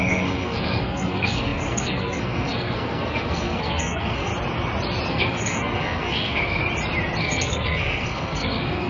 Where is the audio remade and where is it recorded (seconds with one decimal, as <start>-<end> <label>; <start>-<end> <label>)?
0.0-4.3 remade; 4.3-5.1 recorded; 5.1-6.6 remade; 6.6-7.2 recorded; 7.2-8.9 remade